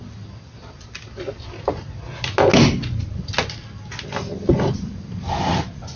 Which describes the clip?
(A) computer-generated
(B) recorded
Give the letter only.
B